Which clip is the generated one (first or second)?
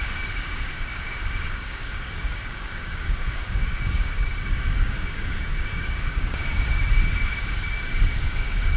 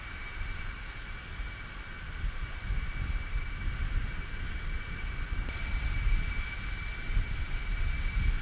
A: first